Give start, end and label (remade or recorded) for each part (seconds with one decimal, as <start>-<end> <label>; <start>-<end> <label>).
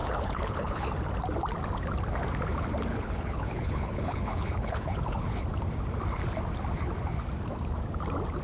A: 0.0-0.9 remade; 0.9-2.9 recorded; 2.9-5.3 remade; 5.3-8.4 recorded